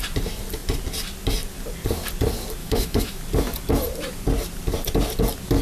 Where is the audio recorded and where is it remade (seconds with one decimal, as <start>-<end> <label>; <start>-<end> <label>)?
0.0-2.6 recorded; 2.6-3.2 remade; 3.2-5.6 recorded